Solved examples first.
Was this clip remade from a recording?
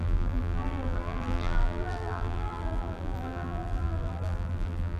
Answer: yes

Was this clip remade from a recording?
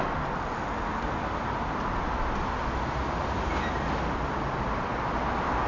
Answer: no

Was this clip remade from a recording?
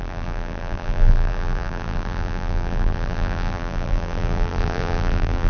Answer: yes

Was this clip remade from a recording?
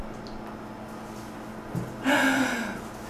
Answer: no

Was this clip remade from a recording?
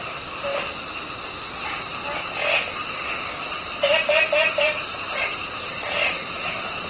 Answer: no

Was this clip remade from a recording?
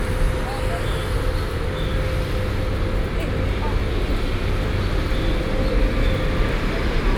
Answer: no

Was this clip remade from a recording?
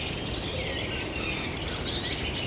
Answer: no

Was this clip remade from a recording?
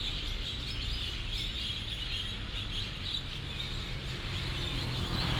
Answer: no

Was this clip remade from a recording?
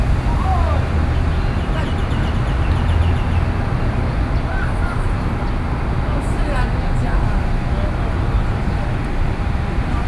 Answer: no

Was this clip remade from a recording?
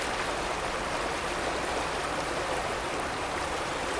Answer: no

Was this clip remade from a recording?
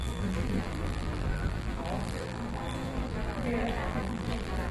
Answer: yes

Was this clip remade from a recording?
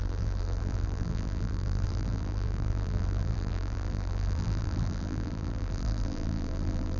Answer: yes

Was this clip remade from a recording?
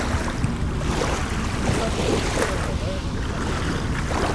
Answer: no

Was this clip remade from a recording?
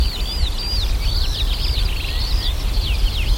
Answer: no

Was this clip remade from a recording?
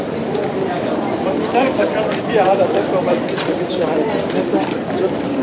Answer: yes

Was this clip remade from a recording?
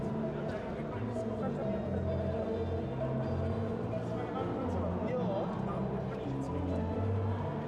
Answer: no